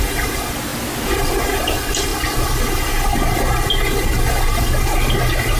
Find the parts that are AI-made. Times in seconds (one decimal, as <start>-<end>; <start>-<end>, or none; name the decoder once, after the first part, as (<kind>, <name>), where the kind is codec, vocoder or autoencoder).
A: none